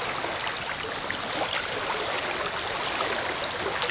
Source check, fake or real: real